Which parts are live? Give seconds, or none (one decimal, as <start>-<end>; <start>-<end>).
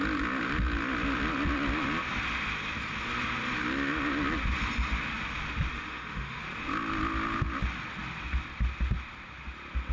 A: 0.0-5.7; 6.4-9.9